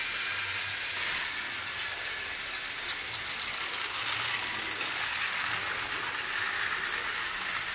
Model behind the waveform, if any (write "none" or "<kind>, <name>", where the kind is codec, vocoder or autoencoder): none